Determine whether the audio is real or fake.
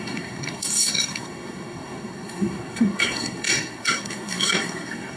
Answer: fake